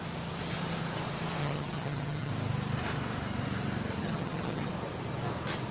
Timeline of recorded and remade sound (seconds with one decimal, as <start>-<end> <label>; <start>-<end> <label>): 0.0-1.4 recorded; 1.4-2.3 remade; 2.3-4.0 recorded; 4.0-4.7 remade; 4.7-5.7 recorded